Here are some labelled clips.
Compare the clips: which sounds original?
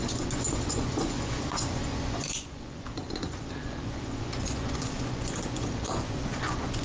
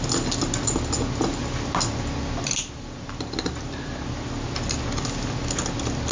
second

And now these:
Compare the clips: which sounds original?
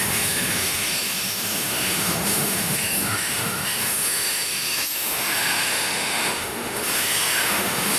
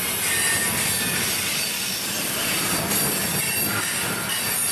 second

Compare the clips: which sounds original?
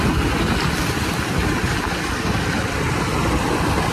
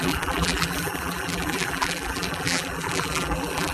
first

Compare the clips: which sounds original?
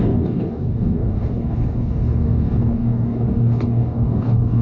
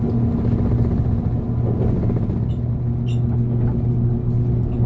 second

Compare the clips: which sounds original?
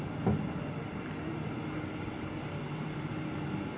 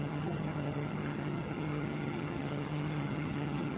first